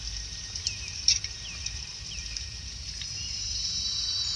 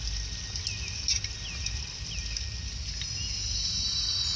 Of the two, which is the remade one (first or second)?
first